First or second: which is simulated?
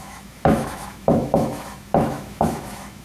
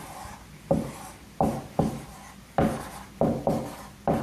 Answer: first